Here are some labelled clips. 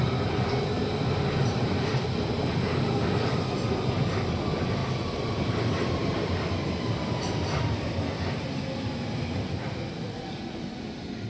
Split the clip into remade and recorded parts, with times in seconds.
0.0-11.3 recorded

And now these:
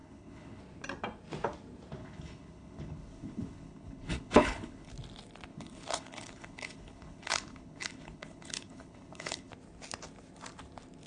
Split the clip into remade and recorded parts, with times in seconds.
0.0-0.6 remade; 0.6-2.0 recorded; 2.0-4.9 remade; 4.9-5.5 recorded; 5.5-9.5 remade; 9.5-11.1 recorded

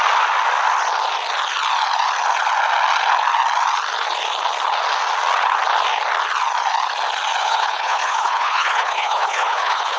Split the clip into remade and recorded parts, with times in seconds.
0.0-7.4 recorded; 7.4-10.0 remade

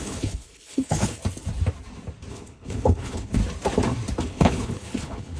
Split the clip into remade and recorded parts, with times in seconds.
0.0-1.2 remade; 1.2-2.3 recorded; 2.3-3.4 remade; 3.4-4.2 recorded; 4.2-5.4 remade

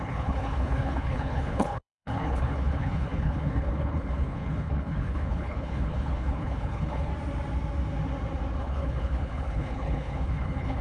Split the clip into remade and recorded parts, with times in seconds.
0.0-7.1 remade; 7.1-8.6 recorded; 8.6-10.8 remade

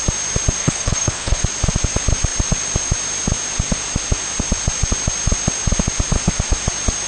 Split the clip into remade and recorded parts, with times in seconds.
0.0-0.6 recorded; 0.6-1.4 remade; 1.4-7.1 recorded

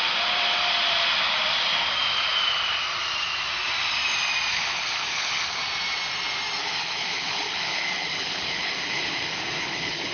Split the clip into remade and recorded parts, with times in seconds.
0.0-4.5 recorded; 4.5-5.6 remade; 5.6-6.6 recorded; 6.6-10.1 remade

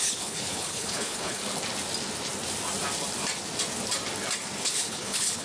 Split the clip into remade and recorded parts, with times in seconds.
0.0-1.4 remade; 1.4-4.6 recorded; 4.6-5.4 remade